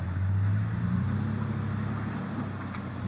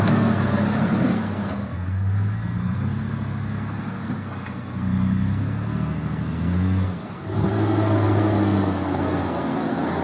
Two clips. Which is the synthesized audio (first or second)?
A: second